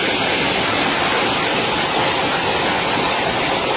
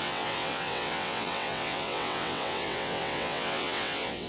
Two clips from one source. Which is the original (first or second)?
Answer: first